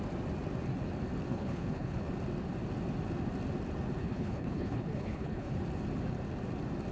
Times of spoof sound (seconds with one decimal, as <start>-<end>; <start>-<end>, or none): 1.3-2.1; 4.0-5.6